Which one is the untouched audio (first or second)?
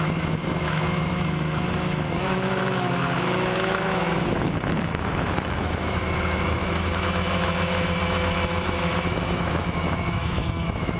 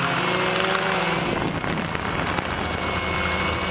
second